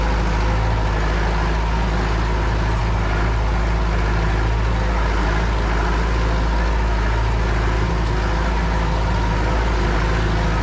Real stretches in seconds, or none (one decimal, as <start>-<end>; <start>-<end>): 0.0-10.6